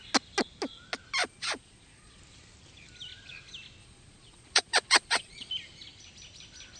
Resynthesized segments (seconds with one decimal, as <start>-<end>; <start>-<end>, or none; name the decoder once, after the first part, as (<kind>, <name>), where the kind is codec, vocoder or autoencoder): 1.2-2.2 (vocoder, Vocos); 3.8-5.5